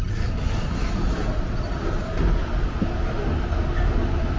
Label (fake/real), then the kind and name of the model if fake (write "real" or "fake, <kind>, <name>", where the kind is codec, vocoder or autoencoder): real